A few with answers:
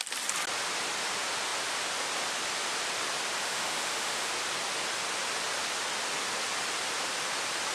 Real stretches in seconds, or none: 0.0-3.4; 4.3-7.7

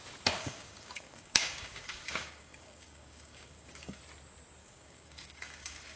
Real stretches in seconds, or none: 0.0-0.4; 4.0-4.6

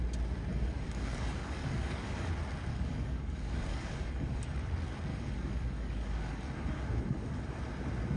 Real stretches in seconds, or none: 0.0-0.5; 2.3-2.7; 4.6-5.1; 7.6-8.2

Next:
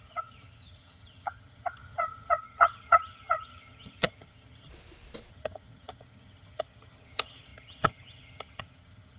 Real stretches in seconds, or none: 4.7-5.3

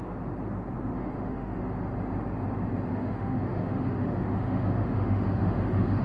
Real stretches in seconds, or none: 0.0-0.9; 1.6-2.9

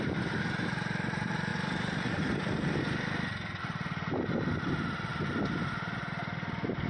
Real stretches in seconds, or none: 0.0-6.9

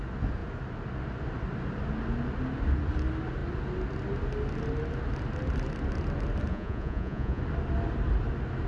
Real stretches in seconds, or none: 0.0-6.5; 7.4-8.7